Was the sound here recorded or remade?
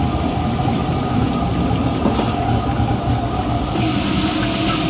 recorded